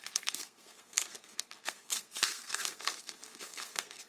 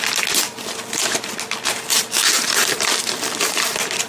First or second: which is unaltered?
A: second